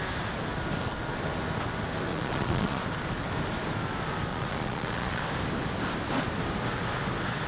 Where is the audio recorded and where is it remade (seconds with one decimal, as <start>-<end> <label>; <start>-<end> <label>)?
0.0-2.1 recorded; 2.1-2.8 remade; 2.8-4.3 recorded; 4.3-5.2 remade; 5.2-7.5 recorded

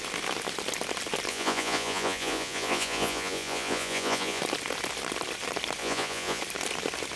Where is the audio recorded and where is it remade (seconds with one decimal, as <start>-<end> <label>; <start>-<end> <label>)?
0.0-1.3 recorded; 1.3-4.4 remade; 4.4-5.8 recorded; 5.8-6.4 remade; 6.4-7.2 recorded

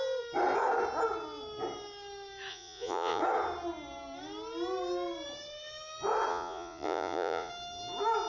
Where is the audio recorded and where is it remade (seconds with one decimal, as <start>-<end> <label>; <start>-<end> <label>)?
0.0-2.5 recorded; 2.5-3.2 remade; 3.2-6.3 recorded; 6.3-7.5 remade; 7.5-8.3 recorded

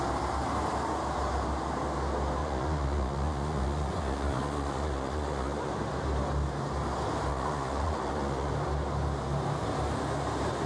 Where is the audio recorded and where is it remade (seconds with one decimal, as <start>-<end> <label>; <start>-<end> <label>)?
0.0-2.4 recorded; 2.4-5.7 remade; 5.7-7.3 recorded; 7.3-8.5 remade; 8.5-10.7 recorded

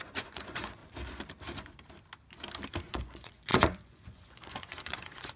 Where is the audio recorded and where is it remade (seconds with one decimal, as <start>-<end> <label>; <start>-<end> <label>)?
0.0-0.8 remade; 0.8-2.8 recorded; 2.8-5.4 remade

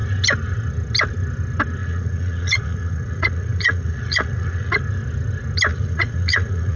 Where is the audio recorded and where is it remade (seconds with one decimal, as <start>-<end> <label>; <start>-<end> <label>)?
0.0-1.8 recorded; 1.8-4.8 remade; 4.8-5.7 recorded; 5.7-6.8 remade